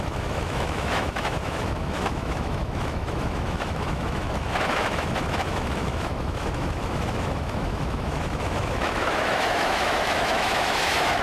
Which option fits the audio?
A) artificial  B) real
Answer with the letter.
A